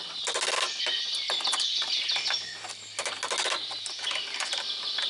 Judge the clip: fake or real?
real